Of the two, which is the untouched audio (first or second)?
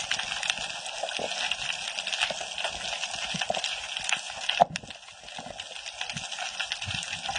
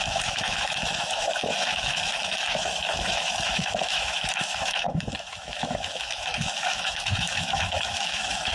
first